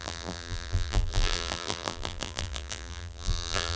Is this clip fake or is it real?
fake